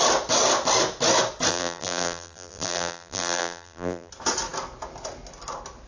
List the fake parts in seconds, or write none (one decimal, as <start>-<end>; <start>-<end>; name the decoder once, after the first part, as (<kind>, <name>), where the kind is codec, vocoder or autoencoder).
1.5-4.1 (vocoder, BigVGAN v2)